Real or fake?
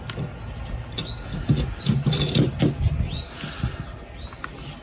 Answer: real